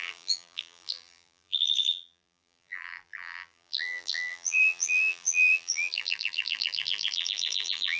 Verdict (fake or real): fake